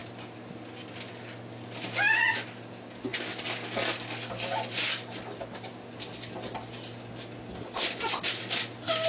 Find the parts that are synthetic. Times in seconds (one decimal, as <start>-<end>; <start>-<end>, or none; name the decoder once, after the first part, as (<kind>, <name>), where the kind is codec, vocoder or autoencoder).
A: none

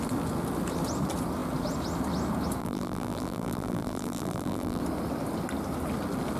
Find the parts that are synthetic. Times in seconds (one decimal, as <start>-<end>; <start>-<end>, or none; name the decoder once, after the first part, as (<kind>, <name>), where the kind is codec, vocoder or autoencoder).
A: 2.6-4.8 (vocoder, BigVGAN v2)

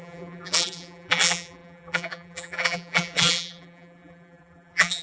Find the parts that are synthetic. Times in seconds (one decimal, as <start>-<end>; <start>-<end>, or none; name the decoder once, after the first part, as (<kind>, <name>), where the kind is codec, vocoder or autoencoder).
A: 0.0-5.0 (vocoder, BigVGAN v2)

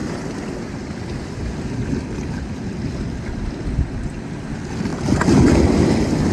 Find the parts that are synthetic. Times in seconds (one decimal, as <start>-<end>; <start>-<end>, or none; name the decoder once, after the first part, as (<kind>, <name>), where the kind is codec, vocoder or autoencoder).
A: none

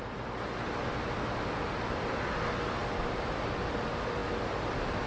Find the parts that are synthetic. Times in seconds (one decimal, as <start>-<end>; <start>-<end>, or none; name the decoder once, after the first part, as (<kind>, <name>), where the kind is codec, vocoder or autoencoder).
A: none